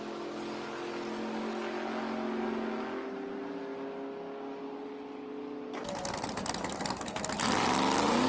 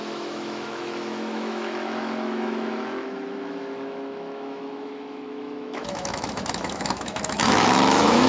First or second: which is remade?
second